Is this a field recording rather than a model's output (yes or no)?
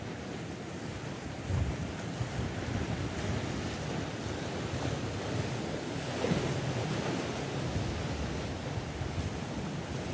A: yes